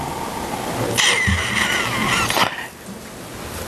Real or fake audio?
real